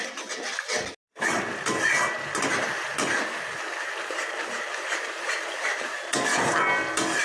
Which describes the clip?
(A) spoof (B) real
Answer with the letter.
B